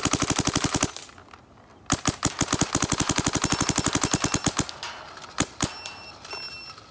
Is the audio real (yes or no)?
yes